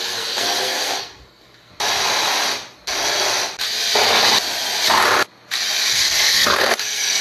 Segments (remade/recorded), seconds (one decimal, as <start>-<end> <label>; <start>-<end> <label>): 0.0-1.7 remade; 1.7-5.9 recorded; 5.9-7.2 remade